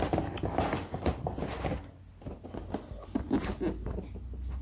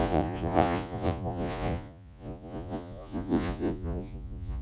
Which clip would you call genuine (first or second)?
first